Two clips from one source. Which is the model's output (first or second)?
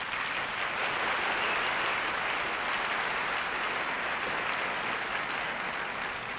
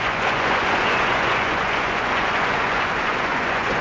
second